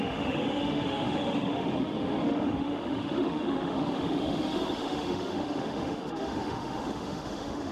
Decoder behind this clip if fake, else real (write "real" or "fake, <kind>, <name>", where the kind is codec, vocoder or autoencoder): fake, autoencoder, DAC-VAE